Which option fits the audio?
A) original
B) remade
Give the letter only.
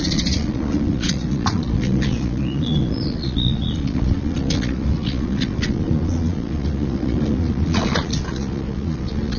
B